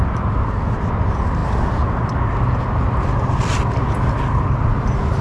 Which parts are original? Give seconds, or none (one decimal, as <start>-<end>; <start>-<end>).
0.0-5.2